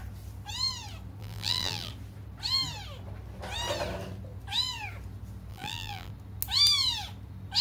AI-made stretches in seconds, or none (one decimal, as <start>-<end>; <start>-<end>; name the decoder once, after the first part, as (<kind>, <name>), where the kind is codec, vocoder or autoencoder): 1.2-1.9 (vocoder, BigVGAN v2); 5.5-6.1